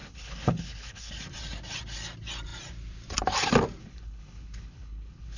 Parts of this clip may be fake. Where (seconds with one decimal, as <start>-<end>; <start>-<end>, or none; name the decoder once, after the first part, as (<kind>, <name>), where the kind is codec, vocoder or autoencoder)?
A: 0.0-1.1 (codec, HILCodec); 3.8-5.4